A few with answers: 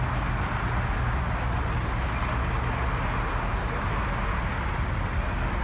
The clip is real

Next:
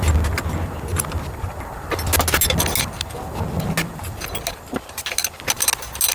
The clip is real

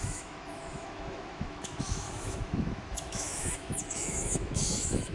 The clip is fake